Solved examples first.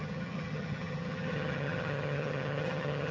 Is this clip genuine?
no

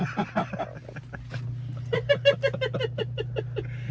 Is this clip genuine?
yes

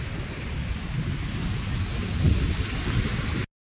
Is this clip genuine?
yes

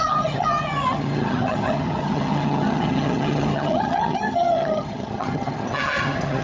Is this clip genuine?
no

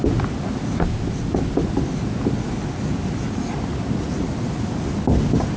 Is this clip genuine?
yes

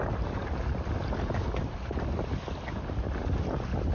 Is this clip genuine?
yes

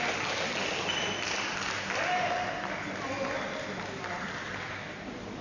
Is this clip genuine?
yes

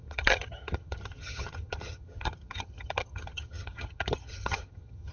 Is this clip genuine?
no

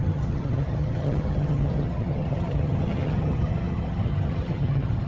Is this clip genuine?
no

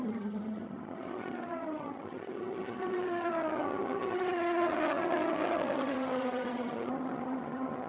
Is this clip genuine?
no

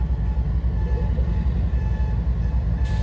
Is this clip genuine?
yes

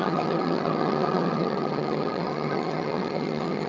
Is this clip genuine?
no